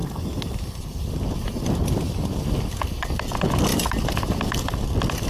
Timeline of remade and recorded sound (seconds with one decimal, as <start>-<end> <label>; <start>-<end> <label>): 0.0-3.2 remade; 3.2-3.7 recorded; 3.7-4.4 remade; 4.4-5.3 recorded